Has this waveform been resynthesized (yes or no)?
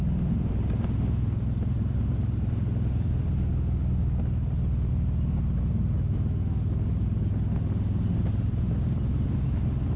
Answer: no